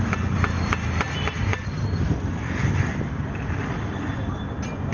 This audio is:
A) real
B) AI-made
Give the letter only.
A